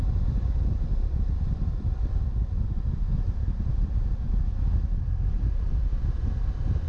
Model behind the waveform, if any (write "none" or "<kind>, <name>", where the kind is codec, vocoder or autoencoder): none